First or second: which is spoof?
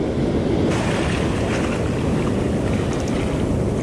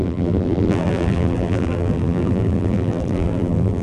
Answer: second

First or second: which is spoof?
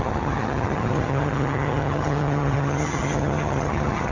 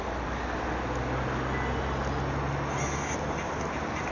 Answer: first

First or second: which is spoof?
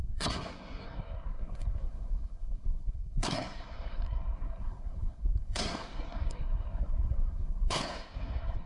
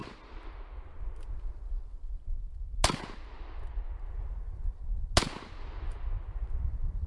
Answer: first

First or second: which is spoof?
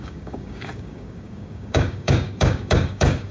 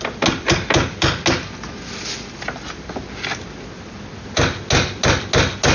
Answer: first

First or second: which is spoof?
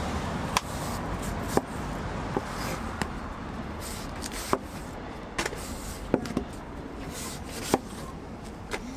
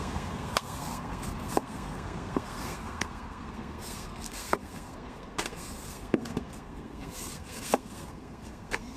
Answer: second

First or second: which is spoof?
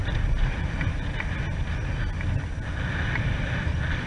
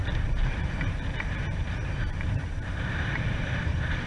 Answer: second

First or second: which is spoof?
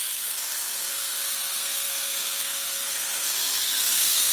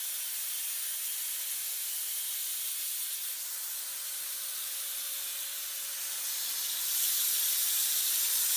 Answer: first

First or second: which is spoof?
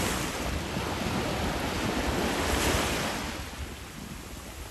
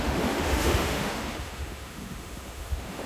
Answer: second